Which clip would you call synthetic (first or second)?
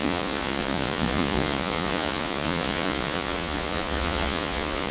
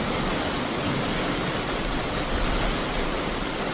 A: first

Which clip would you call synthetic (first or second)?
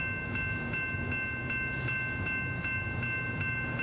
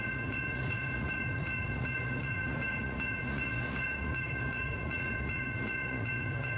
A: second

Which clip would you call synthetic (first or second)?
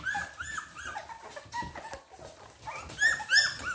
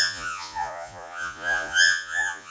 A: second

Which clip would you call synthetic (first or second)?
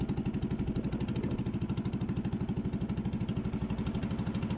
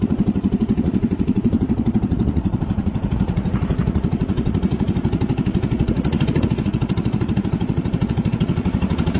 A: second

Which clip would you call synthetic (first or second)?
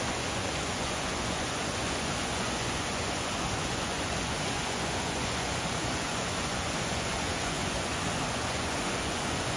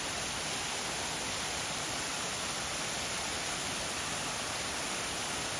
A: first